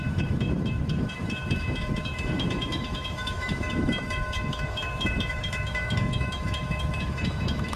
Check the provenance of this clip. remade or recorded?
remade